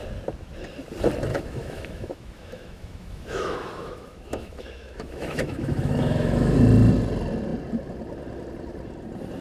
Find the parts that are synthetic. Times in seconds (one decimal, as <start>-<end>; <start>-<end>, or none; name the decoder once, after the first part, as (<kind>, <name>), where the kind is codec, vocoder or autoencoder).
1.3-6.6 (autoencoder, DAC-VAE)

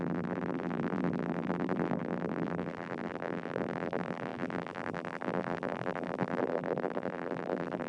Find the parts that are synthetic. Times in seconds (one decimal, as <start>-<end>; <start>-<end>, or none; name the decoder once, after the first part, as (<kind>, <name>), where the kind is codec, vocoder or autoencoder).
0.0-7.9 (vocoder, BigVGAN v2)